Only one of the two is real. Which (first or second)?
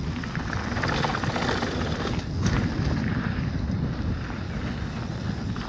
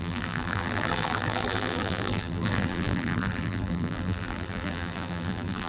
first